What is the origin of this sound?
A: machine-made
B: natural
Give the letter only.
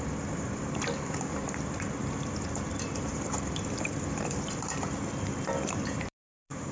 A